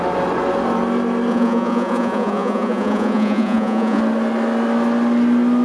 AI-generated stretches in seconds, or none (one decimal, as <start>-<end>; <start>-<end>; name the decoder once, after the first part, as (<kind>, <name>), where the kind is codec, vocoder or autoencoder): 1.3-4.0 (vocoder, Vocos)